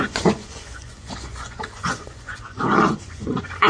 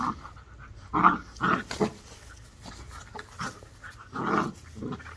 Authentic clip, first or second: second